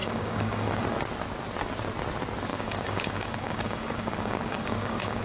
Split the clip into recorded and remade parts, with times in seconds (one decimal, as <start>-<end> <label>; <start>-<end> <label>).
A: 0.0-0.7 remade; 0.7-2.5 recorded; 2.5-5.2 remade